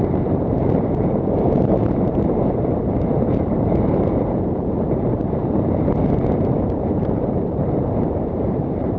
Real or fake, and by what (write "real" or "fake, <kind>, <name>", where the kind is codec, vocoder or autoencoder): fake, vocoder, BigVGAN v2